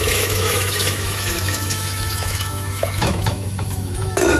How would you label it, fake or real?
fake